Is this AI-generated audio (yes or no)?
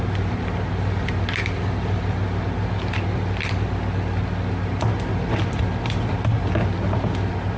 no